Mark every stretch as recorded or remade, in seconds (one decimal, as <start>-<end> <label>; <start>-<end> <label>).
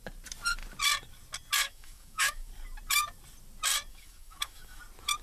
0.0-1.6 recorded; 1.6-2.5 remade; 2.5-3.9 recorded; 3.9-4.8 remade; 4.8-5.2 recorded